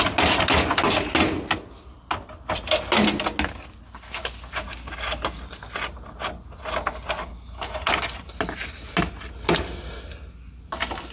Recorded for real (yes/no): yes